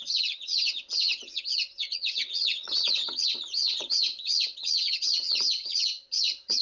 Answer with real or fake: fake